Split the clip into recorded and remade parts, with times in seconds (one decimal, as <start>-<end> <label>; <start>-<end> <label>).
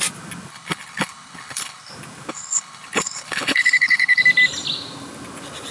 0.0-0.5 recorded; 0.5-1.9 remade; 1.9-2.3 recorded; 2.3-4.2 remade; 4.2-5.7 recorded